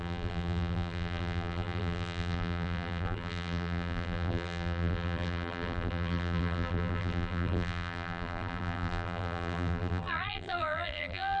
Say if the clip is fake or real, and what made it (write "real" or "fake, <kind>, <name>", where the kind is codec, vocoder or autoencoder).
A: fake, vocoder, BigVGAN v2